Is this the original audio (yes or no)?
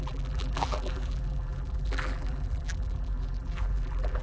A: no